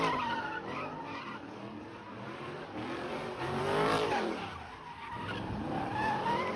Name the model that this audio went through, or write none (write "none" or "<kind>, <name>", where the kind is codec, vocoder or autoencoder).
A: vocoder, BigVGAN v2